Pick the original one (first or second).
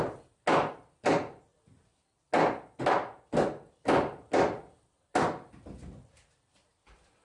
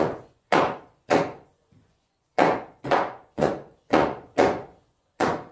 first